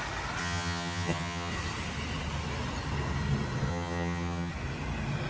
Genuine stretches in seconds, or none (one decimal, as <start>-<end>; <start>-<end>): 0.0-0.4; 1.5-3.7; 4.5-5.3